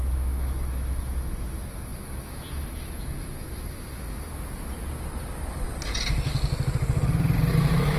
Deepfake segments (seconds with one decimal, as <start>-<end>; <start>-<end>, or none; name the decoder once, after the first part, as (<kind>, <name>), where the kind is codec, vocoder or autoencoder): 0.0-4.3 (autoencoder, DAC-VAE); 7.5-8.0